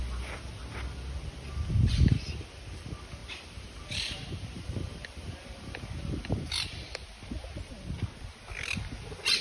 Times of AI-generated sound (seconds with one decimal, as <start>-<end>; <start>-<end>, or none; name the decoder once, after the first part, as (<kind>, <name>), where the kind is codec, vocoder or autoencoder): 3.2-7.7 (vocoder, BigVGAN v2)